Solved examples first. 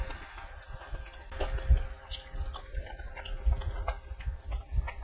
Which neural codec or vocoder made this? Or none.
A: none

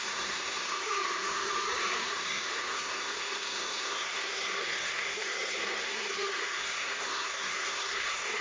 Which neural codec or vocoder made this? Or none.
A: codec, SNAC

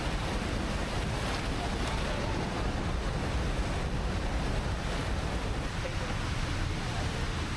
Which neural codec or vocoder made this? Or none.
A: none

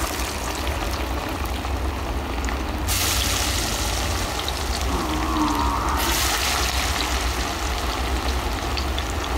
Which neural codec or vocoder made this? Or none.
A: none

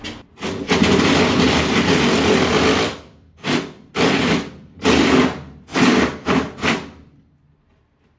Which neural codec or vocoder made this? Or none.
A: none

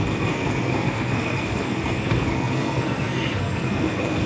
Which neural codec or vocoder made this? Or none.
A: codec, SNAC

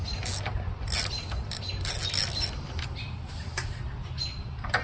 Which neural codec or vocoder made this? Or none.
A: none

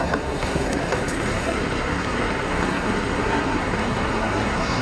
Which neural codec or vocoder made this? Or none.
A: codec, SNAC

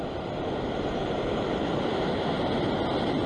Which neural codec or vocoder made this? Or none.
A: none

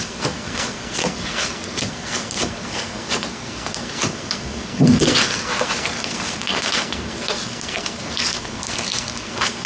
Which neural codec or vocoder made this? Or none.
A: codec, SNAC